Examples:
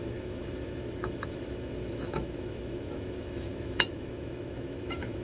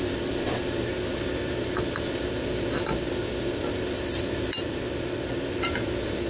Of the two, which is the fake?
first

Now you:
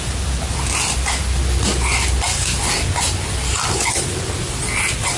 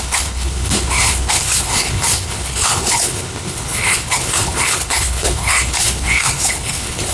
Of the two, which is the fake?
second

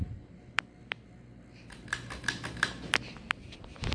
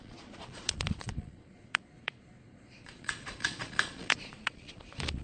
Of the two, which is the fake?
second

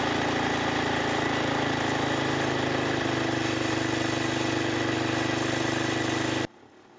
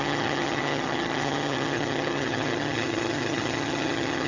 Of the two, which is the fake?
second